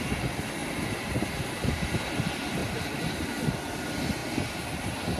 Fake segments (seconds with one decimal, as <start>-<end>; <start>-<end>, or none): 2.6-3.3